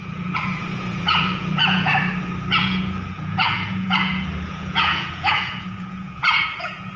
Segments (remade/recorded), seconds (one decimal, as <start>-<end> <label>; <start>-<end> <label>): 0.0-1.9 remade; 1.9-2.6 recorded; 2.6-7.0 remade